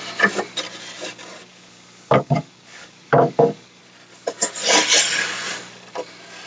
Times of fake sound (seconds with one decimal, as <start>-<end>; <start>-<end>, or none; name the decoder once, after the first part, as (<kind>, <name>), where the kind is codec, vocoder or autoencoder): 1.5-3.8 (codec, DAC)